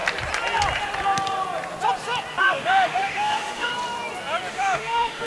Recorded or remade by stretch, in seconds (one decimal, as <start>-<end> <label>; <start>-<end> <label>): 0.0-2.4 recorded; 2.4-3.7 remade; 3.7-4.5 recorded; 4.5-5.3 remade